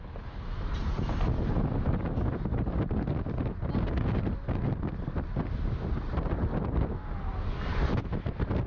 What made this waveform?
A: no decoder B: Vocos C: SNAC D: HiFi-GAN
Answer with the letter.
A